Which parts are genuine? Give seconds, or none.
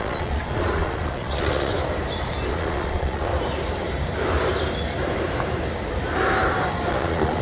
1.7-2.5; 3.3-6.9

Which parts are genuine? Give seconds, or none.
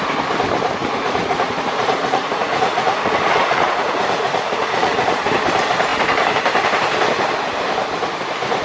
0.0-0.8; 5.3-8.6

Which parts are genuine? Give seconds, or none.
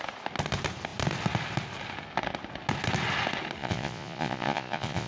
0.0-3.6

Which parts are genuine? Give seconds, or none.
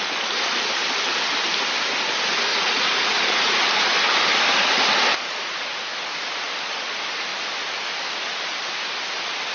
0.0-2.5; 3.7-5.1; 5.9-9.5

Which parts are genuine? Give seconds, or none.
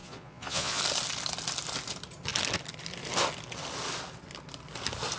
0.8-5.2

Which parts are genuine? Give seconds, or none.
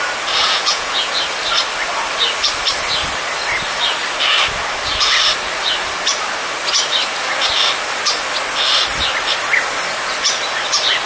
0.0-0.4; 1.1-11.1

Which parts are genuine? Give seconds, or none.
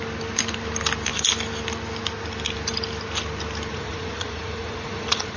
0.0-3.7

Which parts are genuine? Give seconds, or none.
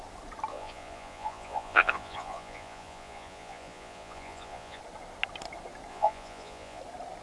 0.0-0.5; 4.8-5.9; 6.8-7.2